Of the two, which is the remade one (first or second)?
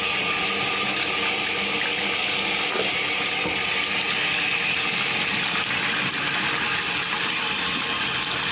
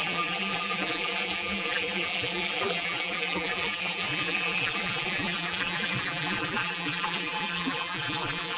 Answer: second